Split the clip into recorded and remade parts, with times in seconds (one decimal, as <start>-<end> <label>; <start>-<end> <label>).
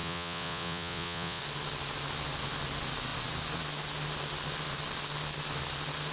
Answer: 0.0-1.4 remade; 1.4-6.1 recorded